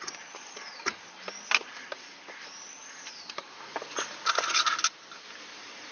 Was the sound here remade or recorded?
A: recorded